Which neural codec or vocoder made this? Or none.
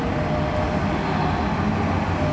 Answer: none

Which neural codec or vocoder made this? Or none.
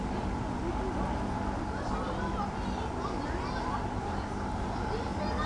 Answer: none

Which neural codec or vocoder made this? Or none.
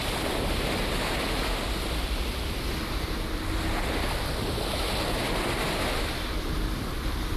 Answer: none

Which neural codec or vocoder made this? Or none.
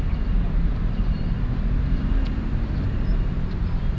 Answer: vocoder, BigVGAN v2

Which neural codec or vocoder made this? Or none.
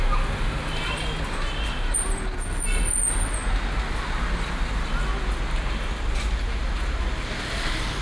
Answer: none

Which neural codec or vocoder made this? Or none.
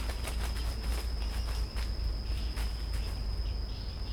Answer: none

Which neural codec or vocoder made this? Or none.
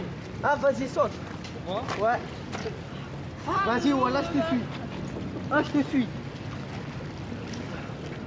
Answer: none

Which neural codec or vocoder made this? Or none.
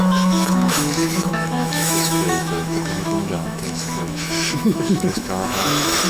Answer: autoencoder, DAC-VAE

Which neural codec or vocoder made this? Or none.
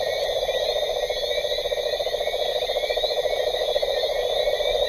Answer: none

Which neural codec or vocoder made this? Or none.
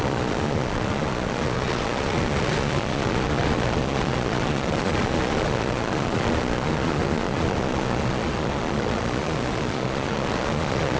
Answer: vocoder, Vocos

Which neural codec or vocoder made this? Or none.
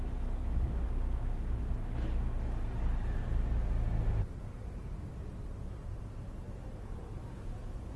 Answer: none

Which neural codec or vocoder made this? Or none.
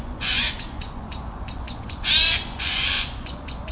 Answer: vocoder, Vocos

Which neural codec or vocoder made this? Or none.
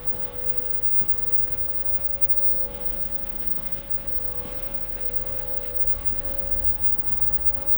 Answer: autoencoder, DAC-VAE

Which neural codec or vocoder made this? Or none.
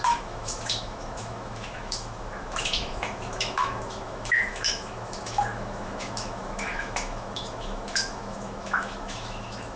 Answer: autoencoder, DAC-VAE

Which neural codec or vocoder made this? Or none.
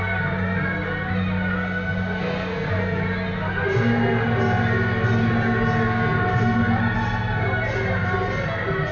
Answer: none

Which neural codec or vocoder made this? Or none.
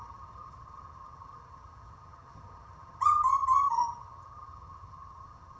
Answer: vocoder, HiFi-GAN